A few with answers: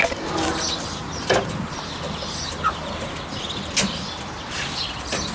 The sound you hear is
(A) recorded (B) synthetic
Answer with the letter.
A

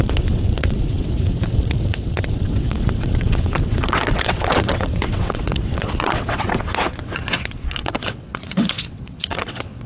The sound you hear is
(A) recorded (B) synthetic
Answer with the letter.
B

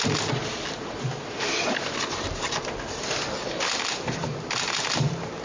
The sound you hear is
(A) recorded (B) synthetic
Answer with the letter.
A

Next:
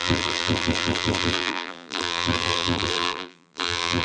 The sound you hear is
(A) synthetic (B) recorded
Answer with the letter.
A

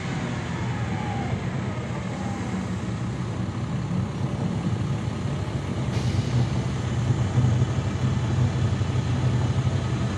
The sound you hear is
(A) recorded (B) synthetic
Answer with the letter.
A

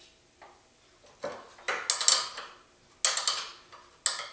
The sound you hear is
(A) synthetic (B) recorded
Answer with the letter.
B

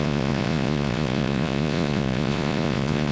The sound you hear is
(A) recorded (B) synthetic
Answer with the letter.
B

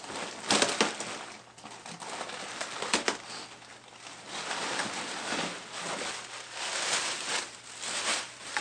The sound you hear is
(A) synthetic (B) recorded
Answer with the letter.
B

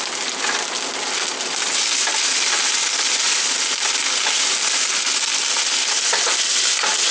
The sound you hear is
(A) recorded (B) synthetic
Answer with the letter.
A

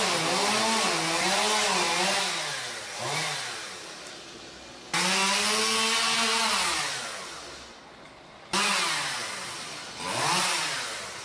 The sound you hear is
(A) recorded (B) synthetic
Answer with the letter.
A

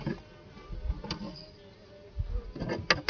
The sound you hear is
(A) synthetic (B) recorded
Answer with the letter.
B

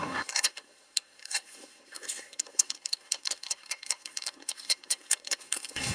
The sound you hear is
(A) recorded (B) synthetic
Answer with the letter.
B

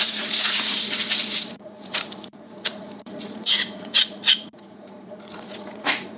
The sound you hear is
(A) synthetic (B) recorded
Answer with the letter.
A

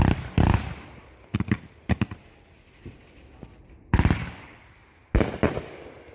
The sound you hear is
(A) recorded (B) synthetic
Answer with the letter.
A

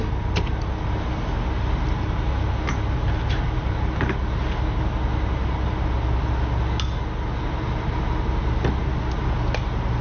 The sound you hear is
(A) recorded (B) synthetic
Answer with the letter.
A